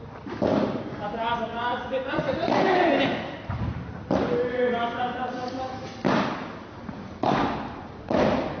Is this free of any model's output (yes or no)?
yes